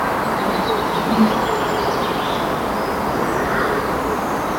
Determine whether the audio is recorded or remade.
recorded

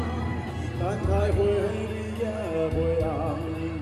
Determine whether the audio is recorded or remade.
recorded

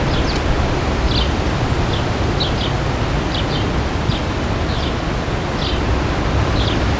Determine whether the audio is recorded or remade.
recorded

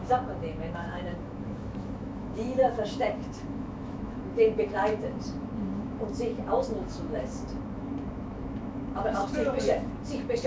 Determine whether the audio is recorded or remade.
remade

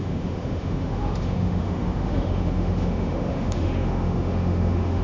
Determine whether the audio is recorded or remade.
remade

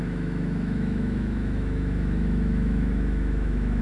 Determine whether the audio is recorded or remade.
remade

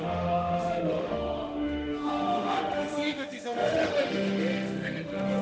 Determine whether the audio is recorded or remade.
remade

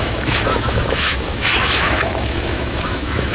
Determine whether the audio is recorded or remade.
remade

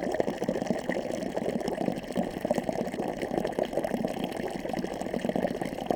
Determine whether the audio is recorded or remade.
recorded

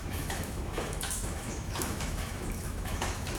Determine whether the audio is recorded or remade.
remade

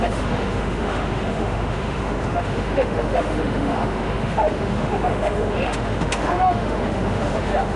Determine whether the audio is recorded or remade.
remade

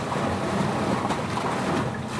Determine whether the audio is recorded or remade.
recorded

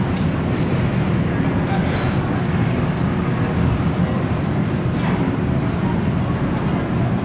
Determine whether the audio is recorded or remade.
recorded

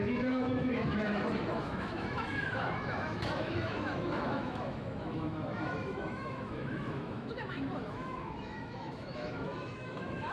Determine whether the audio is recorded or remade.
remade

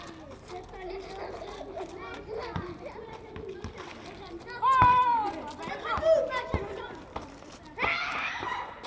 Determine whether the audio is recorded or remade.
recorded